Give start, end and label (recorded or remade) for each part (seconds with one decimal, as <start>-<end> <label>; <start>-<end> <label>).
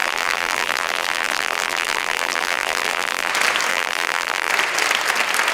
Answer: 0.0-3.3 remade; 3.3-3.7 recorded; 3.7-4.5 remade; 4.5-5.5 recorded